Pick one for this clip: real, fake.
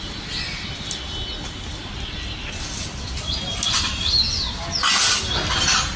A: real